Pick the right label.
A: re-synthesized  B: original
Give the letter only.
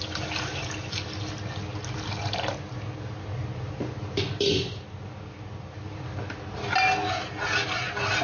B